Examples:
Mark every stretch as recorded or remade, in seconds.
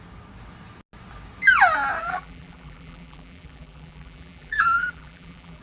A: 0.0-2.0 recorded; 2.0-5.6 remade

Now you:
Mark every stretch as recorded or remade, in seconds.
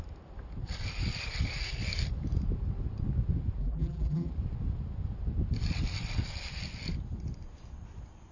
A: 0.0-3.6 recorded; 3.6-4.3 remade; 4.3-8.3 recorded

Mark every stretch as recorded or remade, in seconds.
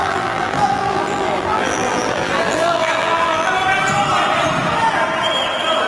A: 0.0-3.5 remade; 3.5-5.9 recorded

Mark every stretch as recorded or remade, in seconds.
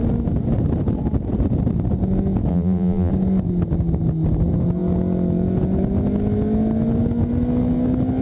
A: 0.0-2.5 recorded; 2.5-3.1 remade; 3.1-8.2 recorded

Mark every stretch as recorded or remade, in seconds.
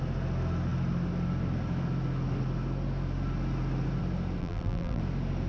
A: 0.0-4.4 recorded; 4.4-5.0 remade; 5.0-5.5 recorded